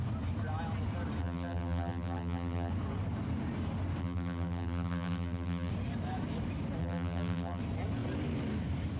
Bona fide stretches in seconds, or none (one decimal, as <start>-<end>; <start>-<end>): 0.0-1.2; 2.7-4.0; 5.7-6.8; 7.6-9.0